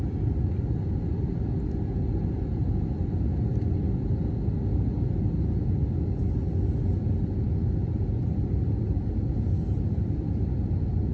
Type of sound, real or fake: real